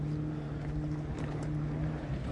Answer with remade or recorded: recorded